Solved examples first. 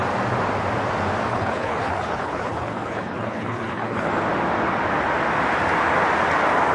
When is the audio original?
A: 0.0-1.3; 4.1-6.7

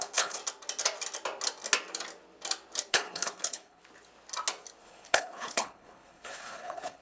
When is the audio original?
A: 0.4-2.9; 3.8-4.8

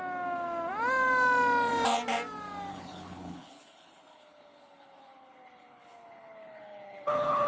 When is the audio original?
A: 0.0-2.7